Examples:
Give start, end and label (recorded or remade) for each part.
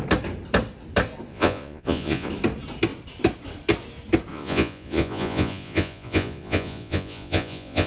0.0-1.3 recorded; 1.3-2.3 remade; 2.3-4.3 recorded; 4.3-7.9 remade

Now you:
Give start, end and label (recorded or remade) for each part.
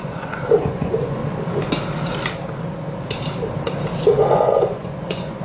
0.0-1.2 remade; 1.2-4.1 recorded; 4.1-5.4 remade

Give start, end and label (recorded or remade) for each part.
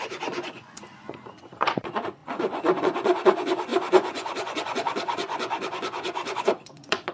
0.0-7.1 remade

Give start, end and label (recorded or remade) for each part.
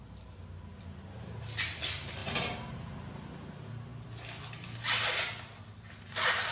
0.0-6.5 recorded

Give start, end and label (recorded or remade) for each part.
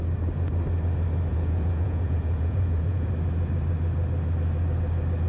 0.0-1.3 recorded; 1.3-3.1 remade; 3.1-5.3 recorded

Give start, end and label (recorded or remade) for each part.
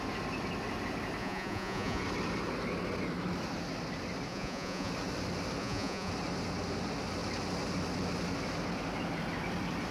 0.0-1.2 recorded; 1.2-2.0 remade; 2.0-4.3 recorded; 4.3-4.9 remade; 4.9-5.6 recorded; 5.6-6.1 remade; 6.1-9.9 recorded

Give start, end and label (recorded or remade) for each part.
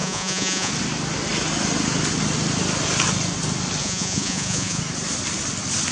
0.0-0.7 remade; 0.7-3.8 recorded; 3.8-4.8 remade; 4.8-5.9 recorded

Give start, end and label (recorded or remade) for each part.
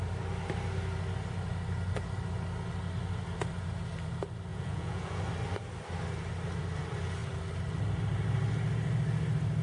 0.0-4.5 recorded; 4.5-5.2 remade; 5.2-9.6 recorded